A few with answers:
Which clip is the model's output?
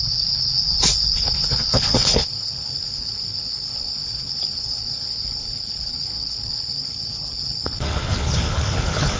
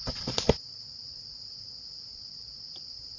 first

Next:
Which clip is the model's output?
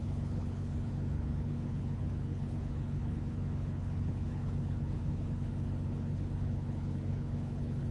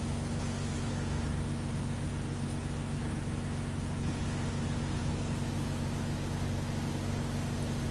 first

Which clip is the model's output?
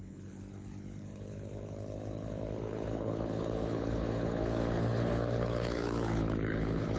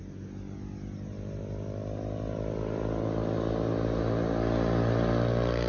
first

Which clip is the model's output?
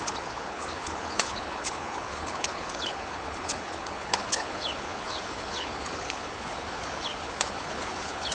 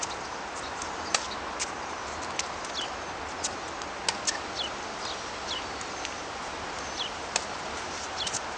first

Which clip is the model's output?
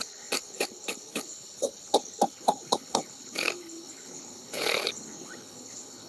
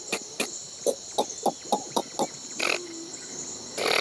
first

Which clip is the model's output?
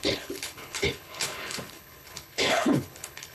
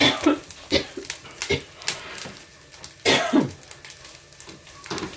first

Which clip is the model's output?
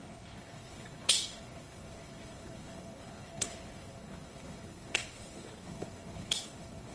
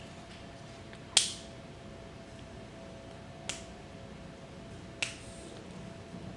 first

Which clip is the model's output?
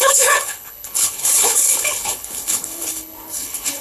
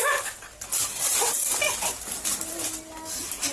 first